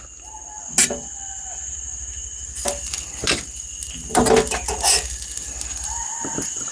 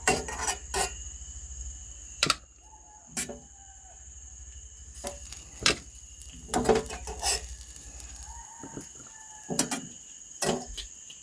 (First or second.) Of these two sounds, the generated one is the second